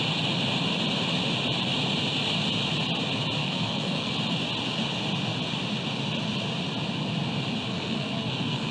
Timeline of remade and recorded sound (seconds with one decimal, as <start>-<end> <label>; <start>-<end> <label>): 0.0-3.4 recorded; 3.4-4.1 remade; 4.1-7.7 recorded; 7.7-8.7 remade